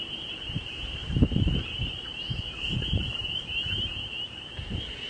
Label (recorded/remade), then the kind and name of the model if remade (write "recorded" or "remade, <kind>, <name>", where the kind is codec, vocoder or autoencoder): remade, vocoder, BigVGAN v2